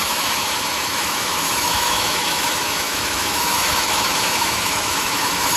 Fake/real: fake